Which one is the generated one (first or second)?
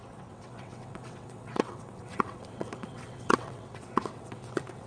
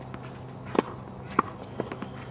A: first